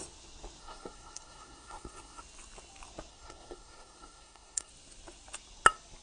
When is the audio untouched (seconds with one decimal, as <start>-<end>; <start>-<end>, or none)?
0.0-0.6; 2.2-3.1; 4.7-6.0